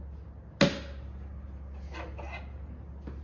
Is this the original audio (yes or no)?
yes